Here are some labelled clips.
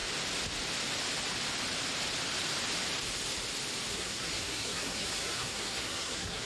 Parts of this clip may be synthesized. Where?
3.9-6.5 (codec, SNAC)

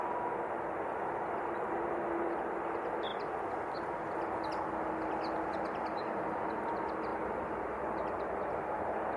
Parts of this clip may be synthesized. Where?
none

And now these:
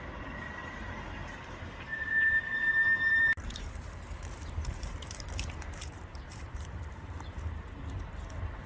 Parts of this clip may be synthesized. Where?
0.6-2.1 (vocoder, BigVGAN v2); 2.6-7.5

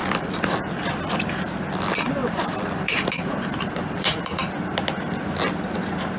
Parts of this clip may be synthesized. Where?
0.0-0.9 (vocoder, BigVGAN v2); 2.2-4.5